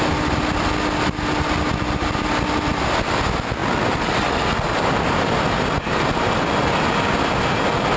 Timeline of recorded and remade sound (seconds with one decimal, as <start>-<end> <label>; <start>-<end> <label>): 0.0-8.0 recorded